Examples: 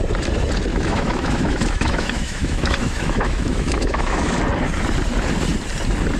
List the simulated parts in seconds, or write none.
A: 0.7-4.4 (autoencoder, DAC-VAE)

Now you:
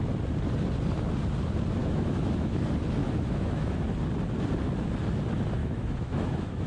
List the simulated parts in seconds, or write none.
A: 1.8-2.6 (autoencoder, DAC-VAE); 3.0-3.8; 5.6-6.7

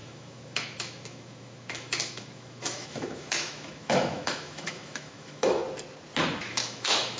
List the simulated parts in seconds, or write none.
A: 0.0-5.6 (autoencoder, DAC-VAE); 6.5-7.2

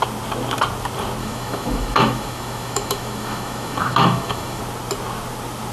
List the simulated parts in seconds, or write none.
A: 1.2-4.6 (autoencoder, DAC-VAE)

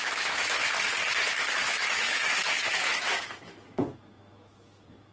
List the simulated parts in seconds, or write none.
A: 0.0-0.6 (autoencoder, DAC-VAE); 1.5-5.1

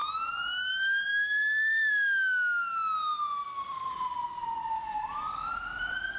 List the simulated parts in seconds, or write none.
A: 1.1-1.9 (autoencoder, DAC-VAE); 3.4-3.9

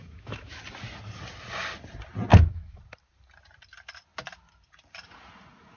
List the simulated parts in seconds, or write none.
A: 0.0-0.6 (autoencoder, DAC-VAE); 2.3-2.8

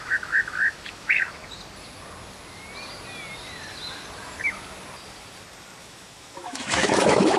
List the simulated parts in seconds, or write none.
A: 0.0-1.4 (autoencoder, DAC-VAE); 5.8-7.4